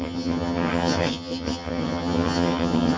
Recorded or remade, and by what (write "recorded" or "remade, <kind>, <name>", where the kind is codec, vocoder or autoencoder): remade, vocoder, HiFi-GAN